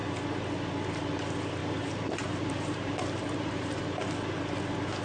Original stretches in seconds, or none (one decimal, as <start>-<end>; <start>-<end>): 0.0-1.6; 3.8-5.0